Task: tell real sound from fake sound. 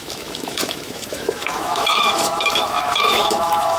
fake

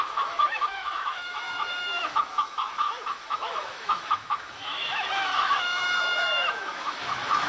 fake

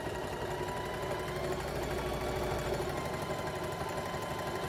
real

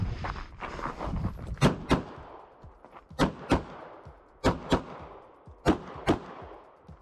real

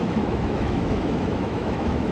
fake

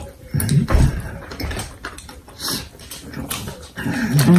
real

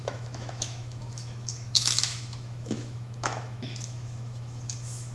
fake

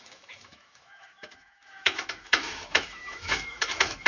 fake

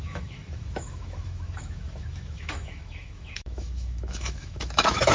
fake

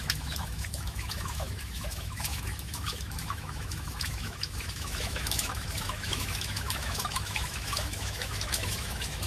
fake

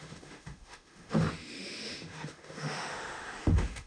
fake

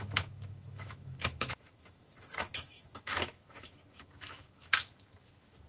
fake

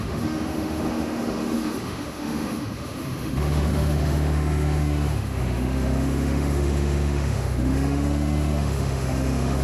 fake